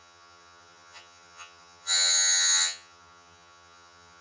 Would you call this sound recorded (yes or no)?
no